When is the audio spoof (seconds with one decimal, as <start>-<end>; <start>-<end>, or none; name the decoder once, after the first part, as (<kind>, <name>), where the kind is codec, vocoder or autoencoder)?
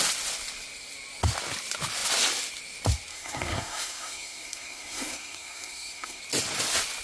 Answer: 3.1-6.2 (codec, SNAC)